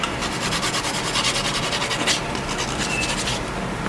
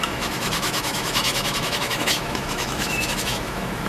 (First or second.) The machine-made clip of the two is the second